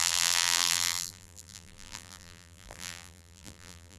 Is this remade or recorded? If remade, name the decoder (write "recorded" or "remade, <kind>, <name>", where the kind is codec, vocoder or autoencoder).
remade, vocoder, BigVGAN v2